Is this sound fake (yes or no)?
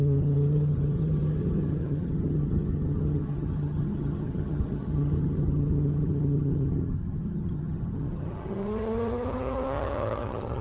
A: yes